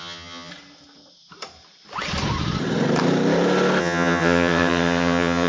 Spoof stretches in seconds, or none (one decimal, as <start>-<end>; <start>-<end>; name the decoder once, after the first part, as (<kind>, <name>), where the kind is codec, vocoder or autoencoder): 0.0-0.5 (vocoder, HiFi-GAN); 3.8-5.5